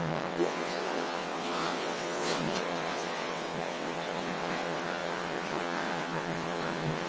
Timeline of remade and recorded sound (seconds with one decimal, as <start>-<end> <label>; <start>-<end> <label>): 0.0-7.1 remade